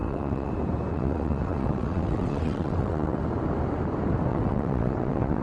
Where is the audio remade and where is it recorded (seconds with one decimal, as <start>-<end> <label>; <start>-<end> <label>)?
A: 0.0-0.5 remade; 0.5-0.9 recorded; 0.9-3.2 remade; 3.2-4.3 recorded; 4.3-5.4 remade